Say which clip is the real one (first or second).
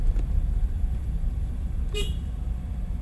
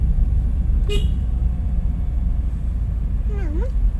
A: second